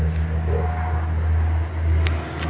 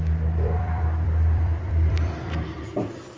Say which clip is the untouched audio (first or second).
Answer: first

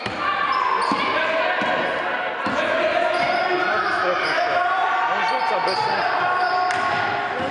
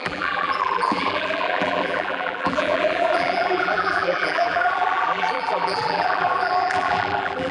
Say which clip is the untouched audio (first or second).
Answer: first